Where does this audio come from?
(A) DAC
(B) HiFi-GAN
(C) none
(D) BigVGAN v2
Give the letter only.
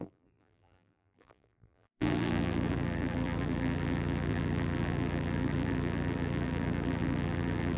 D